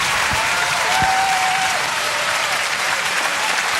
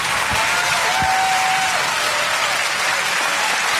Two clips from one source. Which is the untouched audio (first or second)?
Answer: second